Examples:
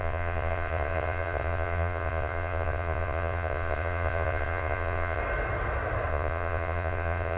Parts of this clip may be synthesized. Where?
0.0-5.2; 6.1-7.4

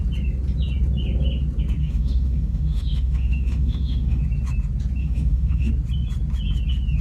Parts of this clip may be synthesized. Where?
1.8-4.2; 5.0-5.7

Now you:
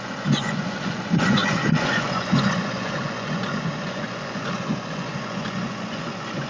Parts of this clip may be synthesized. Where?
0.0-6.5

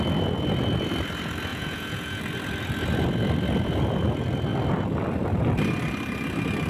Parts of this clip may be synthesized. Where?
1.5-2.2

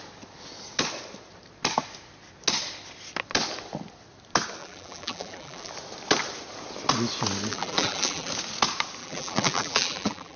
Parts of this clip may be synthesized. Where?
4.6-5.7; 7.5-8.3; 9.0-10.4

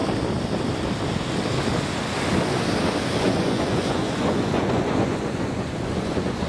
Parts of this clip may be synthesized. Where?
3.2-6.5

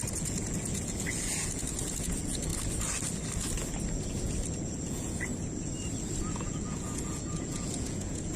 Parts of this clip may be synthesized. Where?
0.0-2.5; 4.5-5.3; 6.2-8.4

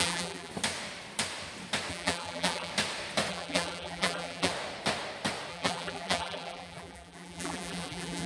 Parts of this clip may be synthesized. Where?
0.0-0.5; 1.9-2.7; 3.3-4.5; 5.5-8.3